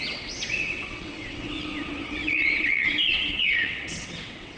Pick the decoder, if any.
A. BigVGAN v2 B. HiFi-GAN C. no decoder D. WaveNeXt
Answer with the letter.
D